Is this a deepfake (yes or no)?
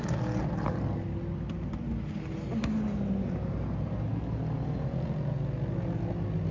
no